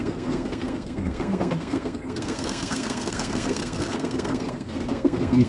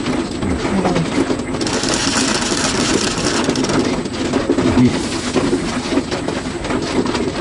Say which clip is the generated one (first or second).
first